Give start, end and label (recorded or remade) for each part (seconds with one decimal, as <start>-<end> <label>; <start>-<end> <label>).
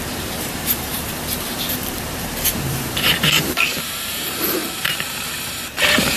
0.0-6.2 remade